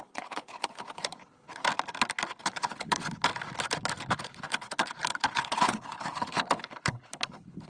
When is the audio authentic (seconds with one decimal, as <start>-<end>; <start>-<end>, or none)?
1.6-2.4; 3.3-4.1